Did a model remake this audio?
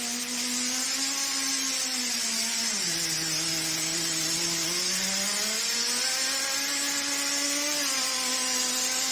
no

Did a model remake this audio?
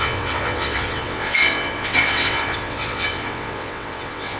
yes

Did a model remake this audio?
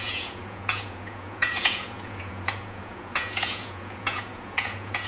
yes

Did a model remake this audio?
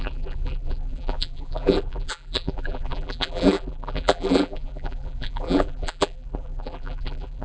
yes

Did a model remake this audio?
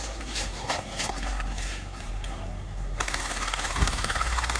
yes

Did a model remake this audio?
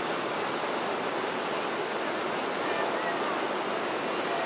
no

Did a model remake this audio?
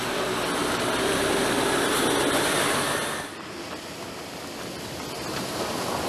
no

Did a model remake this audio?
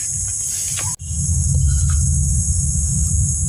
no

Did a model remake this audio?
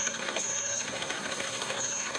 yes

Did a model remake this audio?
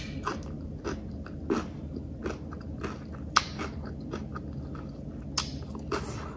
no